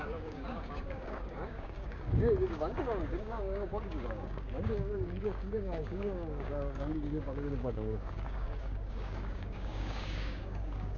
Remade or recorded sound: remade